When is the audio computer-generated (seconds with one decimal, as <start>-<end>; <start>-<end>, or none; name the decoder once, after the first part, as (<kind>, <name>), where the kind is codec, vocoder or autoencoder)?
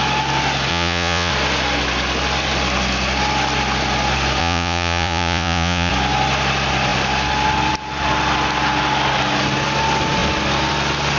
0.7-1.3 (vocoder, Vocos); 4.4-5.9